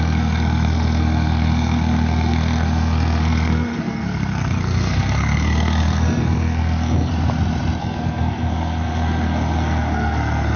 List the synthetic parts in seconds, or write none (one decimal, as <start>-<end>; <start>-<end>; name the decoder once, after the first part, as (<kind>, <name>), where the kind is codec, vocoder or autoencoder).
0.0-7.1 (codec, SNAC); 7.8-10.6